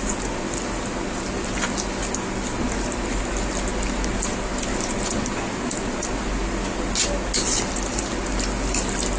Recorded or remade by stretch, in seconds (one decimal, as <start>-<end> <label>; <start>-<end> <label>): 0.0-9.2 recorded